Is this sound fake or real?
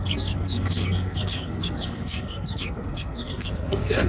fake